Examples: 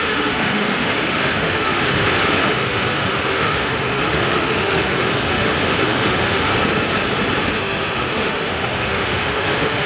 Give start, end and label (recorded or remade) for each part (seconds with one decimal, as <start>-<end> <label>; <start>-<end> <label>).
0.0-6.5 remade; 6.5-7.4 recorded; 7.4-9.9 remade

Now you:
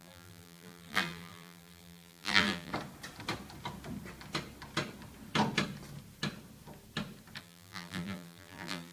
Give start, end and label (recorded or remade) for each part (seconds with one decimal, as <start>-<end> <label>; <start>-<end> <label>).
0.0-2.7 remade; 2.7-7.4 recorded; 7.4-8.9 remade

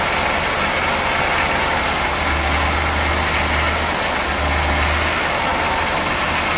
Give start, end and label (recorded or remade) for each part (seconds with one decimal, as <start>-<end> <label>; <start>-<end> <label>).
0.0-6.6 recorded

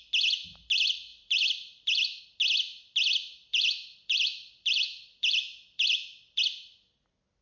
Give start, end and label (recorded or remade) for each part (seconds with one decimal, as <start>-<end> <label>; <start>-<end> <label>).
0.0-1.1 recorded; 1.1-2.2 remade; 2.2-3.5 recorded; 3.5-6.4 remade; 6.4-7.4 recorded

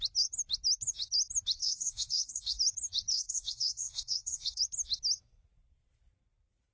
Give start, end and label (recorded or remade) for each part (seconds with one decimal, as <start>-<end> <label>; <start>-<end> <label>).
0.0-1.6 recorded; 1.6-2.6 remade; 2.6-3.1 recorded; 3.1-4.6 remade; 4.6-6.7 recorded

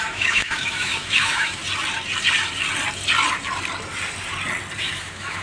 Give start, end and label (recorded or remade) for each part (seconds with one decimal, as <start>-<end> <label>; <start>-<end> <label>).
0.0-1.6 remade; 1.6-4.8 recorded; 4.8-5.4 remade

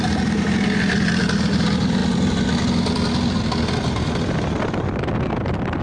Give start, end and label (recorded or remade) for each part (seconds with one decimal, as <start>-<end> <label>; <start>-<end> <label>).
0.0-5.8 recorded